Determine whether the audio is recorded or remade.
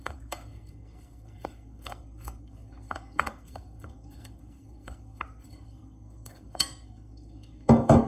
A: remade